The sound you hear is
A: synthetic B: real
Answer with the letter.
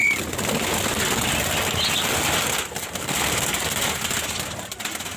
B